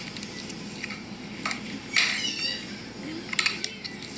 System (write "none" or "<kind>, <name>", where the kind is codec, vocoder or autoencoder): none